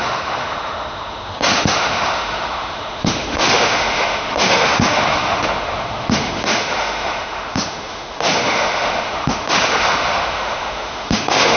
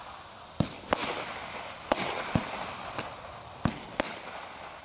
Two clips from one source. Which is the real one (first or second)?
second